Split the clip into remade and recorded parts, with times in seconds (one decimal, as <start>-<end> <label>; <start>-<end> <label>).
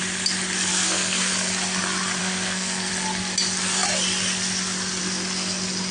0.0-0.7 recorded; 0.7-1.3 remade; 1.3-2.2 recorded; 2.2-2.9 remade; 2.9-5.9 recorded